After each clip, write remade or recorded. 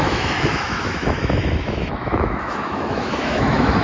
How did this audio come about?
remade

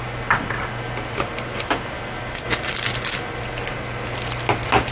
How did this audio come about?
recorded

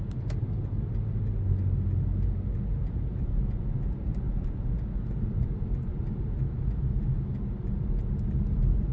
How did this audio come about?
recorded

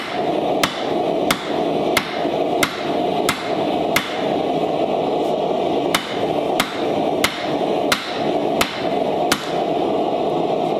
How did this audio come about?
recorded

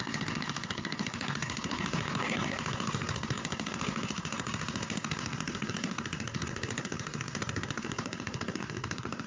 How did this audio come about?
remade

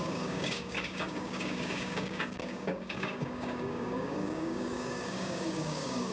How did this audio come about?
remade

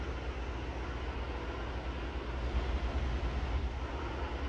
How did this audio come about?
recorded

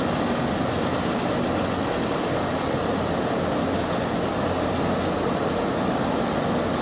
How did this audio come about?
recorded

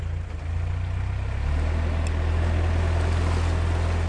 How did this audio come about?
recorded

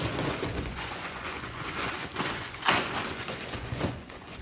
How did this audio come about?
remade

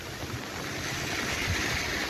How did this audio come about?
recorded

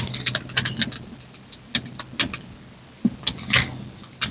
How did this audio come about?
recorded